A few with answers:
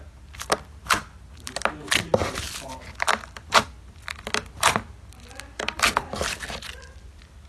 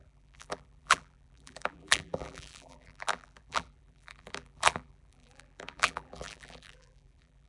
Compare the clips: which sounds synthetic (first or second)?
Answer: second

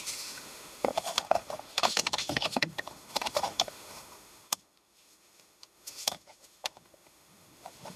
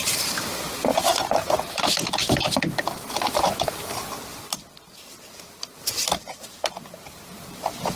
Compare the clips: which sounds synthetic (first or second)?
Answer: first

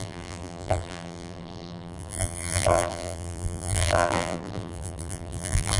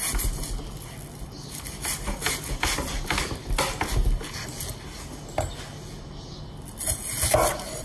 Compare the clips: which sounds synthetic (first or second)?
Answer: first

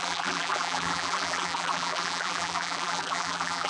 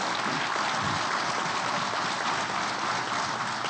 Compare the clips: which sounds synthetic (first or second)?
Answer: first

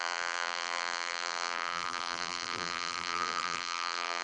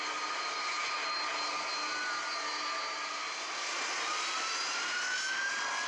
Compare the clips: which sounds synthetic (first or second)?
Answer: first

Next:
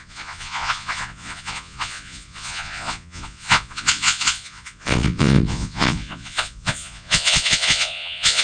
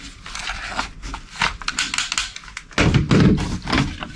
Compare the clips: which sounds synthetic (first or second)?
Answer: first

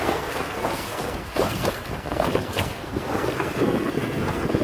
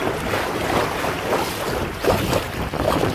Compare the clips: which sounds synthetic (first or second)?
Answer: first